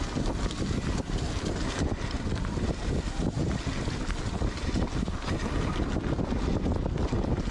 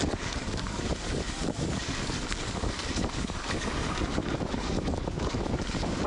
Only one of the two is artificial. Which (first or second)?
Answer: second